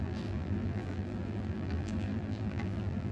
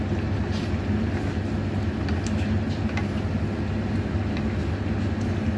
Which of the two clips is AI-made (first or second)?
first